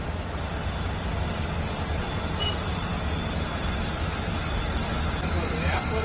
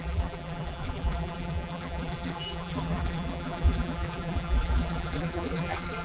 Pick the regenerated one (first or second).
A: second